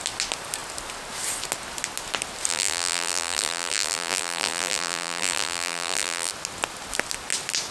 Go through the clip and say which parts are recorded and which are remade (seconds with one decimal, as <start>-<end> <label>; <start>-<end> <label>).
0.0-2.5 recorded; 2.5-6.3 remade; 6.3-7.7 recorded